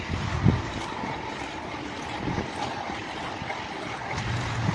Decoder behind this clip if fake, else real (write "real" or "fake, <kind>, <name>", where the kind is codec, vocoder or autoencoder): real